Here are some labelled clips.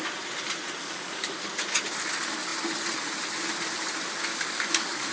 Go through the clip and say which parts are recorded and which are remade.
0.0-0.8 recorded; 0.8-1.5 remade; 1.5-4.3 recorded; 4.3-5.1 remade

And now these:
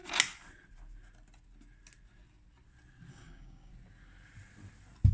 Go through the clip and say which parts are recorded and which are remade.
0.0-3.1 recorded; 3.1-3.7 remade; 3.7-5.1 recorded

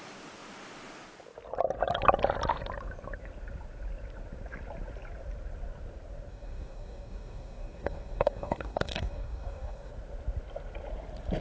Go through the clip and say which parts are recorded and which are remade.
0.0-6.3 recorded; 6.3-9.9 remade; 9.9-11.4 recorded

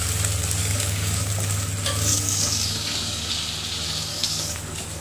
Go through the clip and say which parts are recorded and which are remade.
0.0-0.6 recorded; 0.6-1.3 remade; 1.3-2.1 recorded; 2.1-3.3 remade; 3.3-4.1 recorded; 4.1-5.0 remade

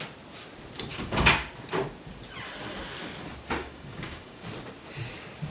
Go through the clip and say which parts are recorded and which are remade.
0.0-0.9 recorded; 0.9-1.5 remade; 1.5-3.6 recorded; 3.6-4.4 remade; 4.4-5.5 recorded

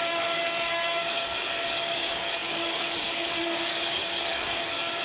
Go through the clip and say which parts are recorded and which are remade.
0.0-5.0 remade

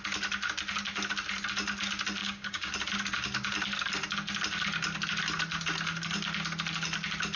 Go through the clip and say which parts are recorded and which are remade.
0.0-2.2 recorded; 2.2-2.7 remade; 2.7-7.4 recorded